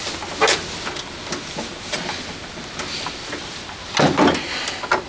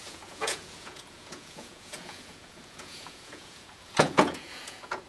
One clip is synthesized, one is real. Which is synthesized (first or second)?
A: second